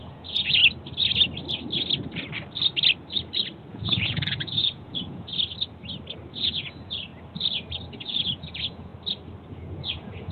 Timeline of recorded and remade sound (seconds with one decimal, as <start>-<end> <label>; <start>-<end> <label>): 0.0-0.6 remade; 0.6-3.7 recorded; 3.7-5.3 remade; 5.3-6.3 recorded; 6.3-7.1 remade; 7.1-7.9 recorded; 7.9-8.9 remade; 8.9-9.5 recorded; 9.5-10.3 remade